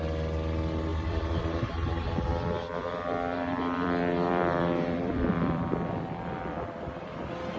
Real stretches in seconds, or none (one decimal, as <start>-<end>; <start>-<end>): 0.0-0.9; 2.3-2.8; 7.0-7.6